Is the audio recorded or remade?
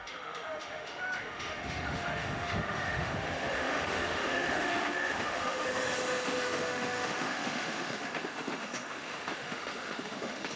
remade